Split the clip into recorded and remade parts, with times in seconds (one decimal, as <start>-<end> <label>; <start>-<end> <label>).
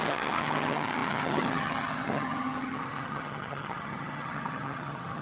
0.0-5.2 remade